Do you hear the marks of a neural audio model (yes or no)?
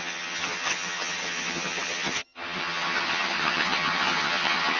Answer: yes